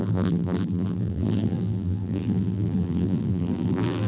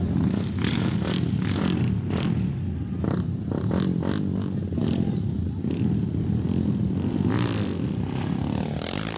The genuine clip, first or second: second